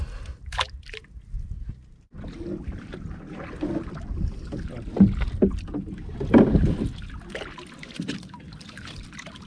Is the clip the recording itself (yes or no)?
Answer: yes